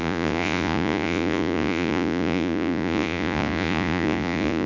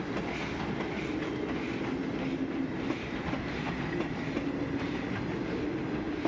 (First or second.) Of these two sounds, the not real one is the first